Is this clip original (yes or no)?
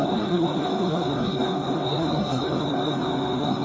no